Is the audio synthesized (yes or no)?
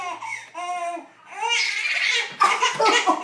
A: no